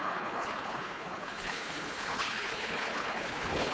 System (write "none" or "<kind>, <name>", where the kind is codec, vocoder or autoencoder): codec, HILCodec